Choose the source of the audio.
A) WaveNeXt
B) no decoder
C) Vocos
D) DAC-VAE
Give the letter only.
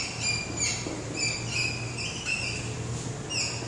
B